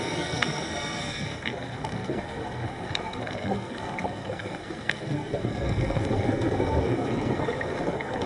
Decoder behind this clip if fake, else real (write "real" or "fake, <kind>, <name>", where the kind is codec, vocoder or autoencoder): fake, codec, SNAC